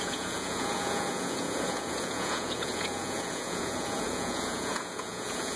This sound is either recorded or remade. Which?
remade